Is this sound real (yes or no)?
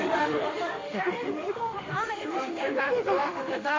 no